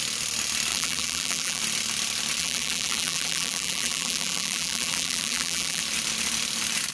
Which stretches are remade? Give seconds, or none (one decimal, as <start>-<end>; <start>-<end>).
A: 0.7-1.6; 2.4-5.8